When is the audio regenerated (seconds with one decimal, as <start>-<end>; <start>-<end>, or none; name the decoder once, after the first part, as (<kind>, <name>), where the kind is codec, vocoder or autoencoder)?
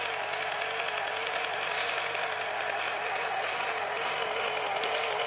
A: 1.2-4.4 (vocoder, BigVGAN v2)